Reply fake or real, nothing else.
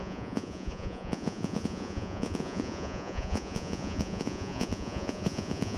fake